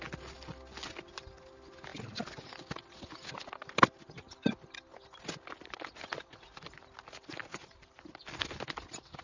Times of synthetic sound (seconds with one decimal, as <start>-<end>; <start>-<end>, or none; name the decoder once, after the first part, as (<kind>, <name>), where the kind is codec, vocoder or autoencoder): none